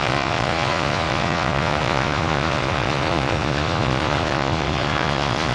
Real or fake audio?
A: fake